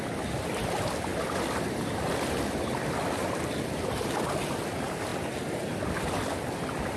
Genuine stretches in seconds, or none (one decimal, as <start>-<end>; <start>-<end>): 0.0-7.0